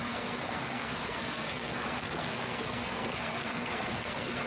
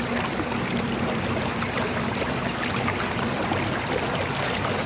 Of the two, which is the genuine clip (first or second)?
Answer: second